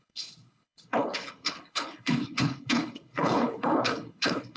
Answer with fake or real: fake